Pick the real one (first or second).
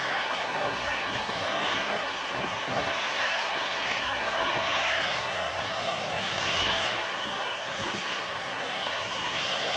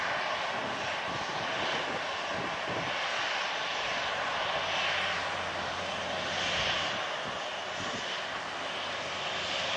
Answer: second